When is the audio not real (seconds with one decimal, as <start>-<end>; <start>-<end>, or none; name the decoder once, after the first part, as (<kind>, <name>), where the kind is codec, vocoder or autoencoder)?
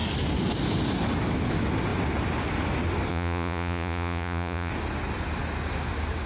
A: 3.1-4.7 (vocoder, Vocos)